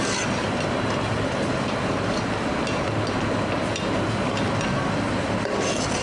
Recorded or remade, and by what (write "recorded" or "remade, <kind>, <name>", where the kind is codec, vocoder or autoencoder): recorded